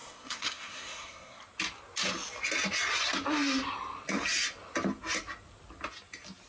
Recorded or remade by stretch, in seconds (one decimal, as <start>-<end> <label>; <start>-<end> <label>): 0.0-1.4 remade; 1.4-6.5 recorded